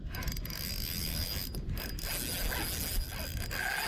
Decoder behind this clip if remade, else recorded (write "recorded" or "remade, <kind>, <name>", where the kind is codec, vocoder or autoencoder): recorded